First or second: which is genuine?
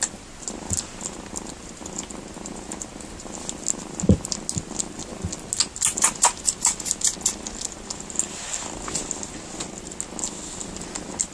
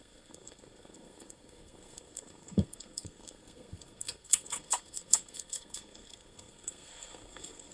first